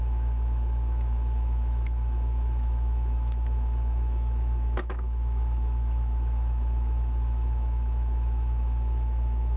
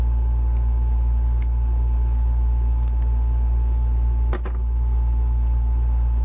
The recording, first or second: second